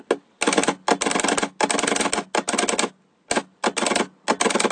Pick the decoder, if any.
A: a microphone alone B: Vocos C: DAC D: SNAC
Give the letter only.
A